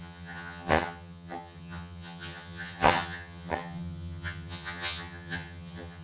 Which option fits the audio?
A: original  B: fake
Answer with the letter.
B